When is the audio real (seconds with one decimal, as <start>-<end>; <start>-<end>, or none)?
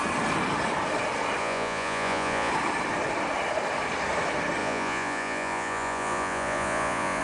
0.0-1.4; 2.5-4.6